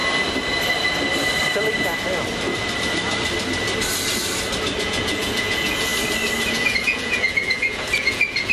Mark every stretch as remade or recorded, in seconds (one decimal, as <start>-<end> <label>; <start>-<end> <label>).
0.0-4.8 recorded; 4.8-5.9 remade; 5.9-6.5 recorded; 6.5-8.5 remade